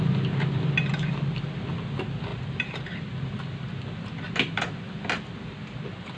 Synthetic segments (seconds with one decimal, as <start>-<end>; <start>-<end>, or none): 2.3-3.0